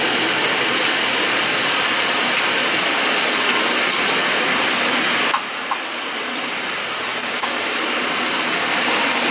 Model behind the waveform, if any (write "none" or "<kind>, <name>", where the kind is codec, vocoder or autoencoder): none